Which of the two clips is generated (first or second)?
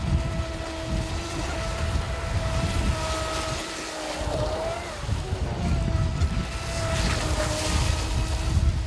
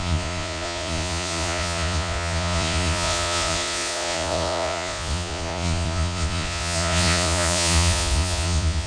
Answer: second